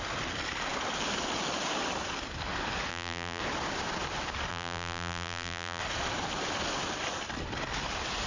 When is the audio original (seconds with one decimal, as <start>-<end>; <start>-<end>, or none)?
0.0-2.9; 3.4-4.5; 5.8-8.3